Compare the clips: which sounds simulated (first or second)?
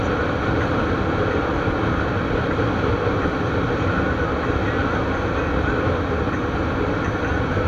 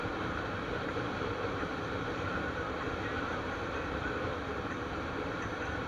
second